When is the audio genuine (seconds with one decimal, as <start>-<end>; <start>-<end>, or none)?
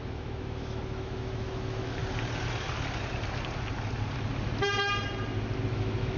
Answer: 2.0-5.7